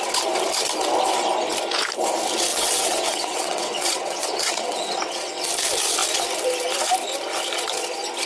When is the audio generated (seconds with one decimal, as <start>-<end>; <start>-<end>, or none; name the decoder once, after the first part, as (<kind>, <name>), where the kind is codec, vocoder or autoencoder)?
2.5-5.5 (vocoder, WaveNeXt)